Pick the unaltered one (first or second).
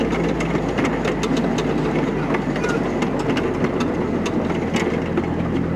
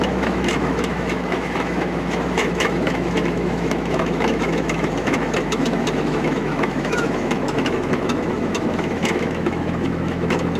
first